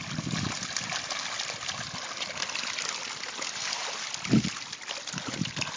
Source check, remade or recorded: recorded